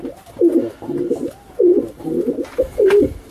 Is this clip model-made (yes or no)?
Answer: no